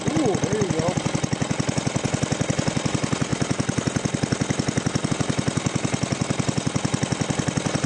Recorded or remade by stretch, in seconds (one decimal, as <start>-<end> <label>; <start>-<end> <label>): 0.0-7.9 recorded